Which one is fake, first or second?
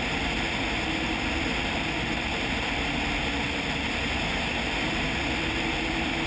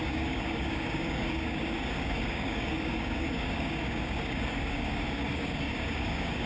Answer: second